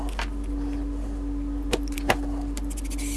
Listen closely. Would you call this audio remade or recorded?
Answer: recorded